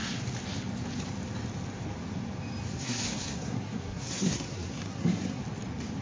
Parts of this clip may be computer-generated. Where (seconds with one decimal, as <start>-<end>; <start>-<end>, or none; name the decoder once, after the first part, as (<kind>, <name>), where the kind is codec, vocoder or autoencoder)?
2.7-5.4 (codec, SNAC)